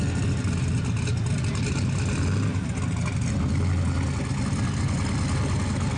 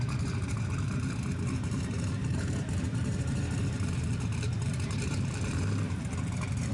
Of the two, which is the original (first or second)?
first